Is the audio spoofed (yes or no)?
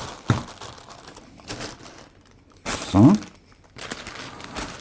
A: no